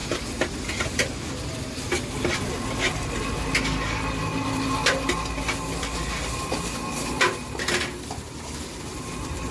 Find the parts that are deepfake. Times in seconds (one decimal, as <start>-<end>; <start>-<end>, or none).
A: none